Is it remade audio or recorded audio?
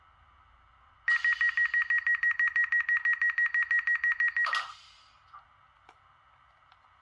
recorded